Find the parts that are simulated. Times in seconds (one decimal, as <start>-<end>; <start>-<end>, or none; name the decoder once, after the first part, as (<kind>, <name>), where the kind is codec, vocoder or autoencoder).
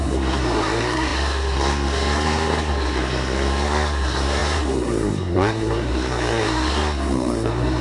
0.0-7.8 (codec, SNAC)